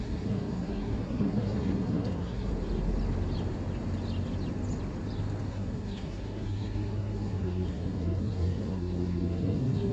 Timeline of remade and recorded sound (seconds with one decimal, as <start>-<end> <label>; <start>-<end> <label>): 0.0-2.5 remade; 2.5-5.5 recorded; 5.5-9.9 remade